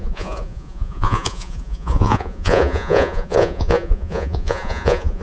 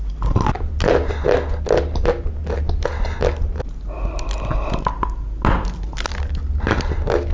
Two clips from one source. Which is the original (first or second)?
second